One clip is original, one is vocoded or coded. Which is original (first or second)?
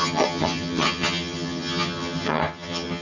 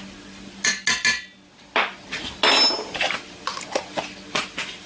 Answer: second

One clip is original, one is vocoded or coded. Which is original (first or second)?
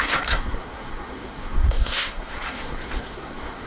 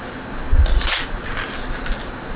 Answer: second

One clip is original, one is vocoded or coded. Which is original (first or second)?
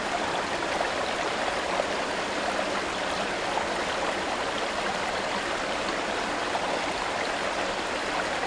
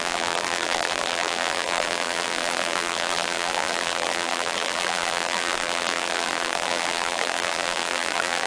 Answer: first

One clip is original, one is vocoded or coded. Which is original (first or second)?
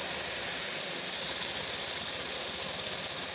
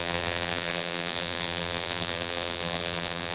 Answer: first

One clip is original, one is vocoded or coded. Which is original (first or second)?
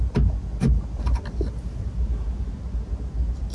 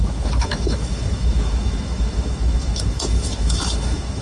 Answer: first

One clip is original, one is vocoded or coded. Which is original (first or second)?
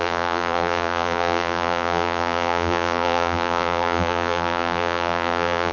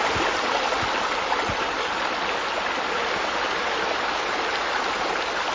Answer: second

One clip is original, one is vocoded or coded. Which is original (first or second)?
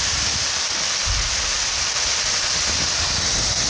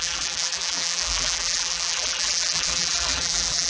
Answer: first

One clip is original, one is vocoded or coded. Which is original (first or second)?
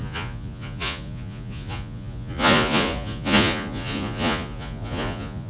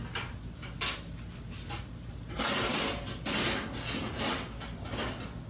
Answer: second